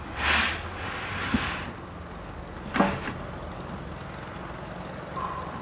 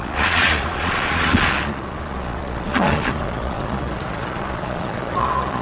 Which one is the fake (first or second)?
second